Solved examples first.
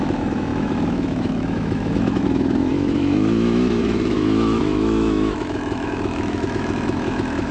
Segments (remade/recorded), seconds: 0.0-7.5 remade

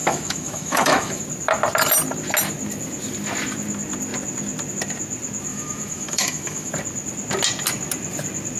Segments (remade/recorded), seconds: 0.0-1.2 remade; 1.2-5.5 recorded; 5.5-6.7 remade; 6.7-8.6 recorded

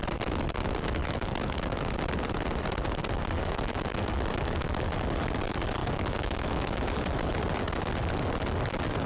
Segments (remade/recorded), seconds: 0.0-1.0 recorded; 1.0-1.9 remade; 1.9-3.4 recorded; 3.4-4.1 remade; 4.1-5.8 recorded; 5.8-6.9 remade; 6.9-9.1 recorded

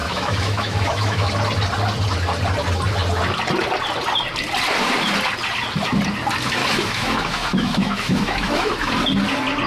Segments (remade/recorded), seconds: 0.0-1.3 remade; 1.3-6.6 recorded; 6.6-8.9 remade; 8.9-9.7 recorded

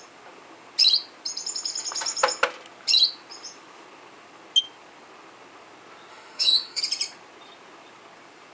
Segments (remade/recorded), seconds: 0.0-6.1 recorded; 6.1-6.8 remade; 6.8-8.5 recorded

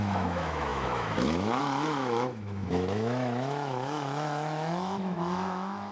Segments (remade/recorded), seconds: 0.0-5.9 remade

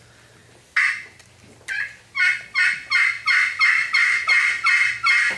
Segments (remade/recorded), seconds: 0.0-5.4 recorded

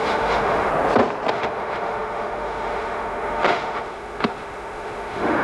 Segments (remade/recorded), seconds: 0.0-0.7 remade; 0.7-1.3 recorded; 1.3-5.4 remade